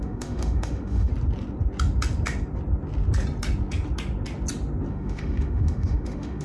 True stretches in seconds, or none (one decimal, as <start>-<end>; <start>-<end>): 1.1-4.9